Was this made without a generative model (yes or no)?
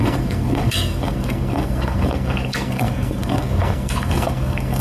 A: no